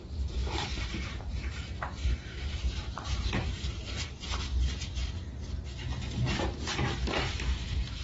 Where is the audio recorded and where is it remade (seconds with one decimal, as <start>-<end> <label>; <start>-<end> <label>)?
0.0-4.5 remade; 4.5-7.3 recorded; 7.3-8.0 remade